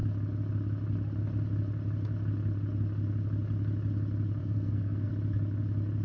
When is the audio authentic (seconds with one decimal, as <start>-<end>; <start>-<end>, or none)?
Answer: 0.0-4.4; 5.1-6.0